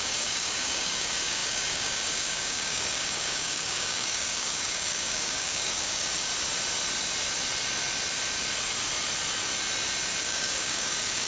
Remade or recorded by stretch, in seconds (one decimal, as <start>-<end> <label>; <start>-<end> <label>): 0.0-6.3 remade; 6.3-10.2 recorded; 10.2-11.3 remade